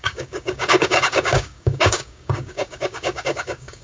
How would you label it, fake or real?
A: fake